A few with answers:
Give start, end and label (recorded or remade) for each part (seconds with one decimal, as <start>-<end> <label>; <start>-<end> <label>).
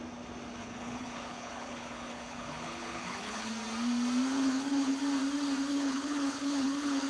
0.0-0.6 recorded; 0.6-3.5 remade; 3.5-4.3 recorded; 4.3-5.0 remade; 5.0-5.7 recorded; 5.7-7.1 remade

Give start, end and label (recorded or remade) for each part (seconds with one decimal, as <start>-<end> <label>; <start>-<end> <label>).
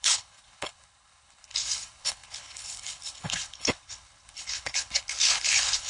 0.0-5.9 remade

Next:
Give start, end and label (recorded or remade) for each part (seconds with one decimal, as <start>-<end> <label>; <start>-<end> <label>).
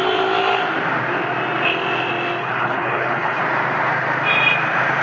0.0-2.4 recorded; 2.4-3.4 remade; 3.4-5.0 recorded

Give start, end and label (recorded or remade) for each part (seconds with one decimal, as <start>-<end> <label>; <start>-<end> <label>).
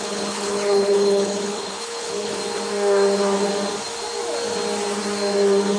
0.0-2.4 remade; 2.4-5.8 recorded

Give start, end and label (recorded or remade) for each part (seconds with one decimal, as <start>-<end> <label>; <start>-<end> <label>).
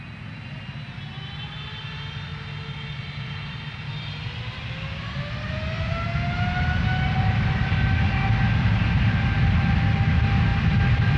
0.0-11.2 recorded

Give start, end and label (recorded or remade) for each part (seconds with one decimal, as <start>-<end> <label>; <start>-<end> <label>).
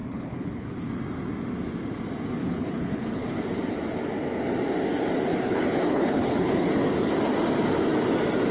0.0-0.9 remade; 0.9-2.4 recorded; 2.4-3.4 remade; 3.4-5.3 recorded; 5.3-7.1 remade; 7.1-8.5 recorded